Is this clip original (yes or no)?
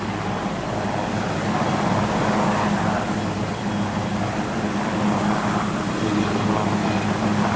yes